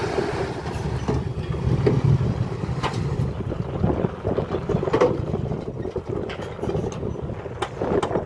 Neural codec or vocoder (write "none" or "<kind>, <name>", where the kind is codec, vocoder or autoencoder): none